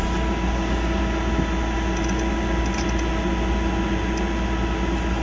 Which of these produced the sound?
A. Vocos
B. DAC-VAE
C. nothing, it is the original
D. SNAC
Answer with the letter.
C